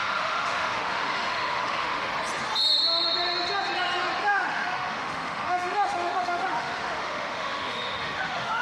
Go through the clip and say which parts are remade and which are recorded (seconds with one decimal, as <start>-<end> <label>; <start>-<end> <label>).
0.0-2.1 remade; 2.1-4.2 recorded; 4.2-8.6 remade